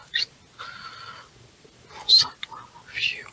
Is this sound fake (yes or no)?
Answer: no